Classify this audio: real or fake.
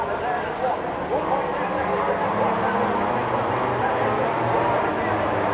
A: real